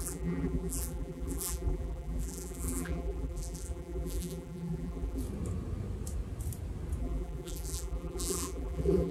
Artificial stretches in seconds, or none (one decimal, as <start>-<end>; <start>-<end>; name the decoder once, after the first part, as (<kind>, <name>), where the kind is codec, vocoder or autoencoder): 0.0-5.2 (vocoder, BigVGAN v2); 7.0-9.1